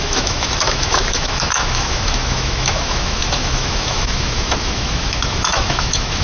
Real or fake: fake